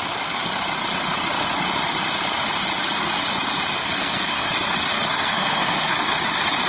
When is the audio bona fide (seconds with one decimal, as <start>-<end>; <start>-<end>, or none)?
0.0-3.8; 4.5-4.9; 5.9-6.7

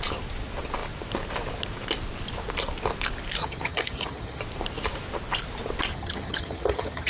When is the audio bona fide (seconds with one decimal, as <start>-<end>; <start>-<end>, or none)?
0.0-3.4; 4.4-5.9

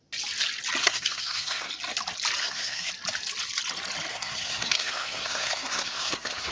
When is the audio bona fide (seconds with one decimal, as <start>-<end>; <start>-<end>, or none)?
0.0-0.8; 1.7-2.4; 2.9-4.1

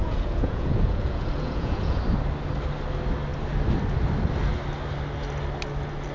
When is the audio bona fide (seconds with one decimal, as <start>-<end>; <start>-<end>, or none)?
2.0-6.1